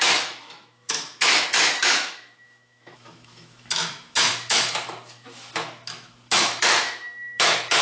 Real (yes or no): no